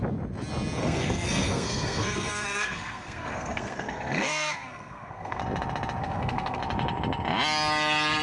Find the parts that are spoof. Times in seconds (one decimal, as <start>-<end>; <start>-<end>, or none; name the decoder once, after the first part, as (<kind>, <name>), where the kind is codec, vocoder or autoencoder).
0.8-5.4 (codec, SNAC); 6.0-6.6